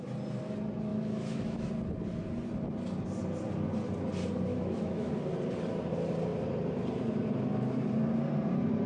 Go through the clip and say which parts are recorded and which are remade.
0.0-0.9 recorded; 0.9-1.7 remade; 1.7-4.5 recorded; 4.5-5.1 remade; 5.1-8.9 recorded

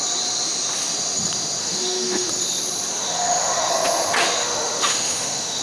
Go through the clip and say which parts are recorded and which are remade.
0.0-1.6 recorded; 1.6-2.3 remade; 2.3-2.9 recorded; 2.9-3.7 remade; 3.7-4.4 recorded; 4.4-5.6 remade

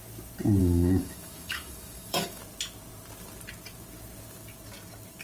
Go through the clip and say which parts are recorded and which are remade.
0.0-0.6 recorded; 0.6-2.4 remade; 2.4-5.2 recorded

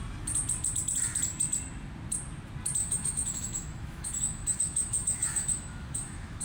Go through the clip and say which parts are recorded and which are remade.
0.0-2.8 recorded; 2.8-6.4 remade

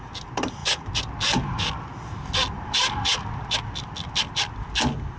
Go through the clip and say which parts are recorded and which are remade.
0.0-5.2 recorded